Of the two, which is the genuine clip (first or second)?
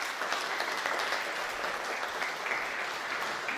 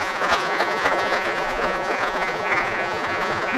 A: first